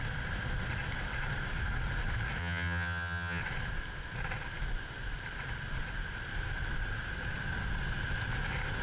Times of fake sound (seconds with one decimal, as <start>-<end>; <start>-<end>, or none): 2.4-3.4